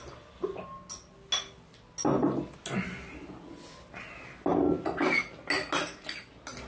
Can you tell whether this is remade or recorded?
recorded